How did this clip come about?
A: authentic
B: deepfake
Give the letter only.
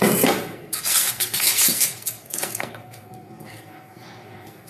B